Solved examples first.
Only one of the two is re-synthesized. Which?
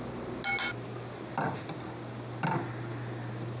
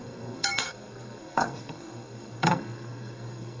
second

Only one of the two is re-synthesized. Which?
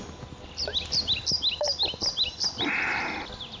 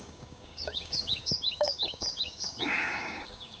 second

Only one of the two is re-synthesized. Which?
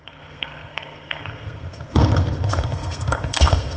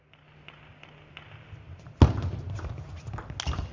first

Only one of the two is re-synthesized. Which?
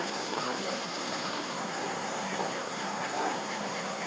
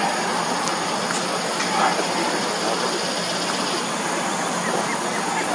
first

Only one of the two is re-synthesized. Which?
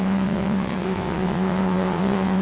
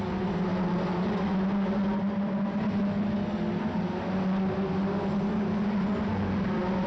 first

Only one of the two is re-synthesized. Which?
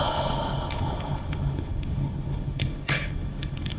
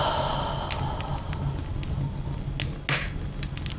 first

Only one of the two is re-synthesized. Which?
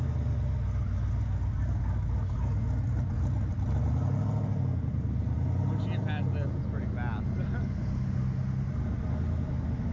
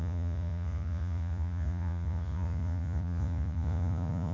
second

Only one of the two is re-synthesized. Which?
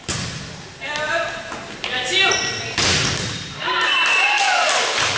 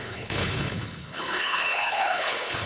second